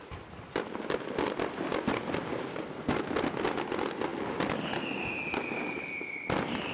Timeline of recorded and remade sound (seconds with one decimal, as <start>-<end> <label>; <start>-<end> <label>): 0.0-6.7 recorded